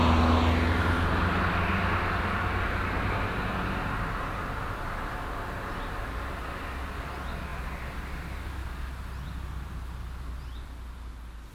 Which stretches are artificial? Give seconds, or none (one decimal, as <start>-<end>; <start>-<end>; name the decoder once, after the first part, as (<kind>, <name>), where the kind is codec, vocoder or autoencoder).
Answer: none

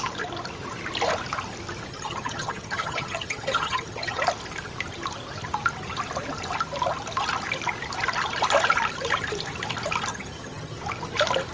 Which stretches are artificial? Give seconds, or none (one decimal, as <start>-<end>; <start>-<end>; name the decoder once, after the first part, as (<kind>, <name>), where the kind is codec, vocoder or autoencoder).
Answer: 1.9-4.2 (vocoder, HiFi-GAN); 10.1-10.8

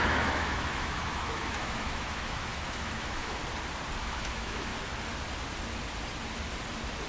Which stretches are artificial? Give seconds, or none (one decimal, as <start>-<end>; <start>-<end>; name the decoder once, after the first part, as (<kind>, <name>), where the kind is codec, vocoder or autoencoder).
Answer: 0.0-3.4 (autoencoder, DAC-VAE); 4.0-4.7

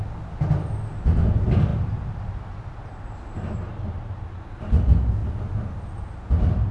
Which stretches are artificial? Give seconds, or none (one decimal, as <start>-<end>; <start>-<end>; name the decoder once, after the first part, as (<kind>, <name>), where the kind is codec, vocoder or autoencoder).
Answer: none

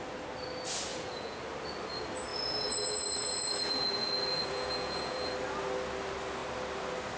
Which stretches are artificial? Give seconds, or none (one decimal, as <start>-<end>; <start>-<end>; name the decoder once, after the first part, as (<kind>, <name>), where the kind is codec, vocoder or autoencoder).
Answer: 0.9-1.4 (vocoder, Vocos); 2.3-5.3